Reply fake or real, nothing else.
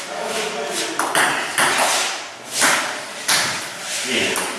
real